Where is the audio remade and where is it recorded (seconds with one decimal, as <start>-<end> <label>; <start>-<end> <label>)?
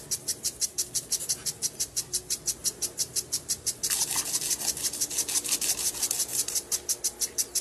0.0-2.6 recorded; 2.6-4.3 remade; 4.3-7.6 recorded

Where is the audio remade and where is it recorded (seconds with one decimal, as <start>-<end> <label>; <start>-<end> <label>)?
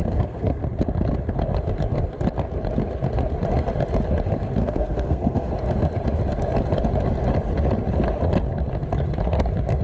0.0-0.6 remade; 0.6-4.6 recorded; 4.6-5.5 remade; 5.5-9.8 recorded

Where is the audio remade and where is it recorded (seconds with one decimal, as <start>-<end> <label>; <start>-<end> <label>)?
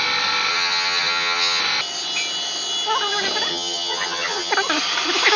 0.0-0.5 recorded; 0.5-1.6 remade; 1.6-3.5 recorded; 3.5-4.5 remade; 4.5-5.4 recorded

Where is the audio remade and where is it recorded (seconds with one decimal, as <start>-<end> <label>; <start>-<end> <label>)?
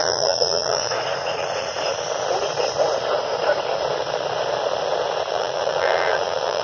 0.0-1.9 remade; 1.9-5.3 recorded; 5.3-6.6 remade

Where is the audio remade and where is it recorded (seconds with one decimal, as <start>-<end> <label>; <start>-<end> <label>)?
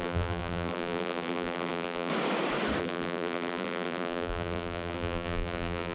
0.0-2.1 remade; 2.1-2.8 recorded; 2.8-5.9 remade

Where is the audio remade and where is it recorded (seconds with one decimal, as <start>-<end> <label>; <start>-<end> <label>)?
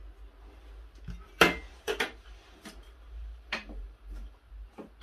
0.0-1.7 recorded; 1.7-4.5 remade; 4.5-5.0 recorded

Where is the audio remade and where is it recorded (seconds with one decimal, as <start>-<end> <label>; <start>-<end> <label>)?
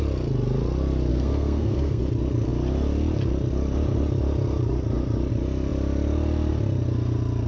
0.0-1.1 recorded; 1.1-2.0 remade; 2.0-7.5 recorded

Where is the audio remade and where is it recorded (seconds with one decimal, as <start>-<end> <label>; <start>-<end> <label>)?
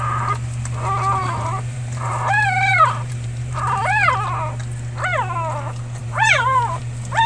0.0-1.2 recorded; 1.2-2.1 remade; 2.1-2.7 recorded; 2.7-3.8 remade; 3.8-6.0 recorded; 6.0-6.8 remade; 6.8-7.3 recorded